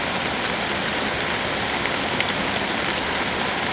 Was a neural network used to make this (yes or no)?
no